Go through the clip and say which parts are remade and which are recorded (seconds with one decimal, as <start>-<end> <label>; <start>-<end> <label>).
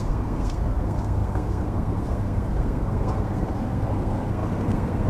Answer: 0.0-5.1 remade